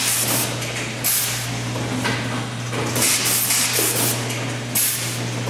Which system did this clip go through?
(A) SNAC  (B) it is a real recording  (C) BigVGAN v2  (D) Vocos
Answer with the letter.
B